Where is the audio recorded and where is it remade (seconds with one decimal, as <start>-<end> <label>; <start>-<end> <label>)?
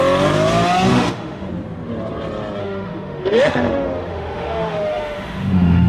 0.0-0.9 recorded; 0.9-1.5 remade; 1.5-2.6 recorded; 2.6-5.9 remade